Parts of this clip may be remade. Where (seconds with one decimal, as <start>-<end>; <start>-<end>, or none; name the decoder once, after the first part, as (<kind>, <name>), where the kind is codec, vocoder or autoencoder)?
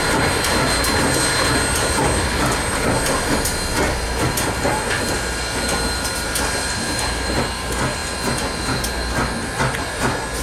none